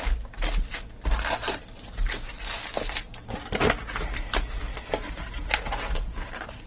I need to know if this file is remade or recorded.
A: recorded